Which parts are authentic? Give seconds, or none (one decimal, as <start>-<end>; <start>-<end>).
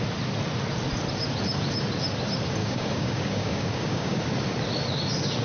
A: 0.0-2.6; 4.2-5.4